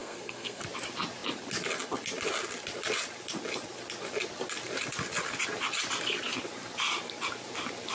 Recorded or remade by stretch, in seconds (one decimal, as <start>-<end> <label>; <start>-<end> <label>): 0.0-0.6 remade; 0.6-7.9 recorded